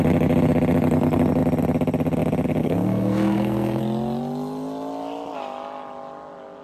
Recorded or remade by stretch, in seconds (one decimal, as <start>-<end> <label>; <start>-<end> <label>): 0.0-2.6 recorded; 2.6-3.8 remade; 3.8-6.6 recorded

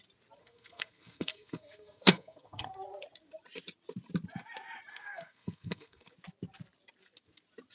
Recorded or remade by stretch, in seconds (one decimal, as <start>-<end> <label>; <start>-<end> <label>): 0.0-0.4 recorded; 0.4-2.7 remade; 2.7-4.9 recorded; 4.9-6.1 remade; 6.1-7.7 recorded